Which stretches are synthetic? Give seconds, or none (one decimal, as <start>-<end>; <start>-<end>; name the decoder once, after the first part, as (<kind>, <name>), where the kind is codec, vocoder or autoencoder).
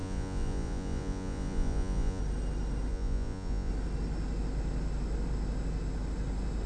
0.0-2.2 (vocoder, Vocos); 2.9-3.7